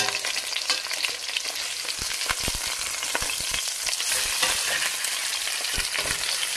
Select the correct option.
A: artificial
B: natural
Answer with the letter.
B